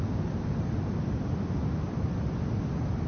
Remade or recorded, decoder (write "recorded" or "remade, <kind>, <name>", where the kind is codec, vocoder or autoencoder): recorded